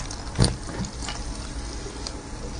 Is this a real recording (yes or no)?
yes